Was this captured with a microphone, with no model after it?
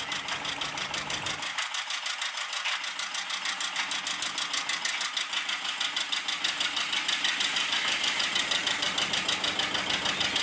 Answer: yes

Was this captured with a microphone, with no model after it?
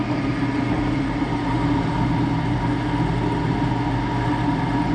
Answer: yes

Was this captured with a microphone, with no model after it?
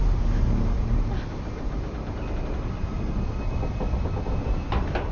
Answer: yes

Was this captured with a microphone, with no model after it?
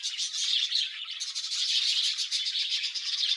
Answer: yes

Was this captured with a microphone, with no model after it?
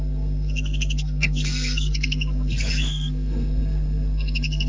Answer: no